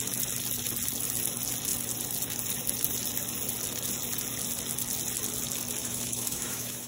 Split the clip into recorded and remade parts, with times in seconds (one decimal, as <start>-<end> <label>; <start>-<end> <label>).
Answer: 0.0-5.8 recorded; 5.8-6.9 remade